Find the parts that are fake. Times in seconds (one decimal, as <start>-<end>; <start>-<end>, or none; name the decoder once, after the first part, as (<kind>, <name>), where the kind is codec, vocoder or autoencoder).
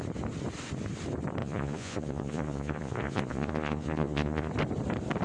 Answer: 1.4-4.5 (vocoder, Vocos)